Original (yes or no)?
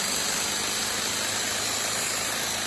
yes